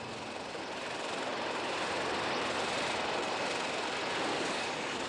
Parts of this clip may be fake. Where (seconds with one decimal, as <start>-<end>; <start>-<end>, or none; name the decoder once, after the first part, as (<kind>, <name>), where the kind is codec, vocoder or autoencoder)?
4.3-5.1 (codec, DAC)